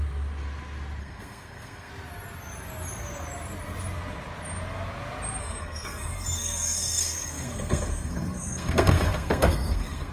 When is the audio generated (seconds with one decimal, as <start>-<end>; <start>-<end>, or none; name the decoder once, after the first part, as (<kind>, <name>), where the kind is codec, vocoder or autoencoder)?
1.0-1.9 (codec, SNAC); 5.4-10.1